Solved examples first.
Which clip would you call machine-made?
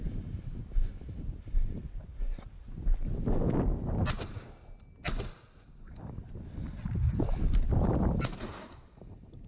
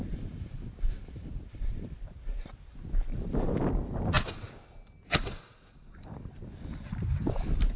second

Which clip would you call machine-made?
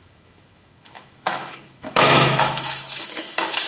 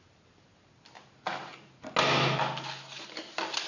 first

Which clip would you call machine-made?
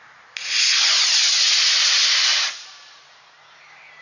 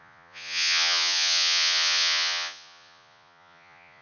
second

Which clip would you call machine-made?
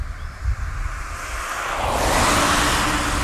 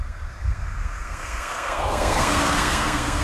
second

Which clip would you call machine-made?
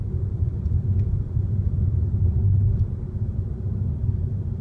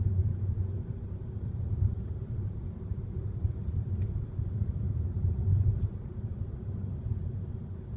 second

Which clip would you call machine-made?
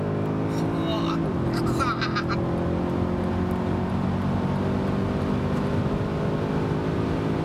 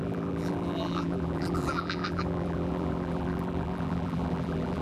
second